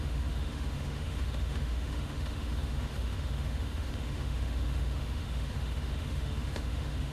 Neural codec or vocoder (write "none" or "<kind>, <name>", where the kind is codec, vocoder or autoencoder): autoencoder, DAC-VAE